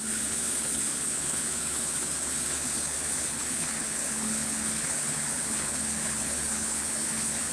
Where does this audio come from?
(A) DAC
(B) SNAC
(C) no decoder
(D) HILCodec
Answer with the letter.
D